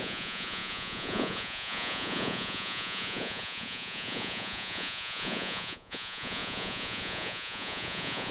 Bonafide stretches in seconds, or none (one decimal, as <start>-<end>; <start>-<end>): none